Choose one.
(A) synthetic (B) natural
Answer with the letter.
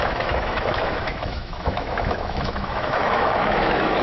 A